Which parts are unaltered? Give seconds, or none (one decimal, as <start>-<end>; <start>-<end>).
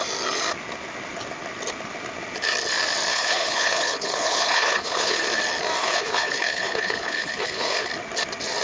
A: 0.0-3.1; 5.2-5.8; 7.9-8.6